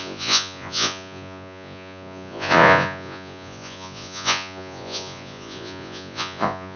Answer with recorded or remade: remade